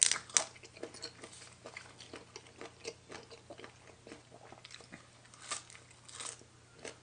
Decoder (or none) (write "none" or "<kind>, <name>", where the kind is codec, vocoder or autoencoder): none